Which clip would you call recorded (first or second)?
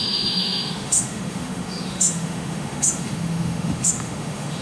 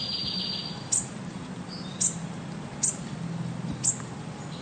second